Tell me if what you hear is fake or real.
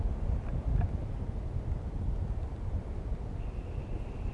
real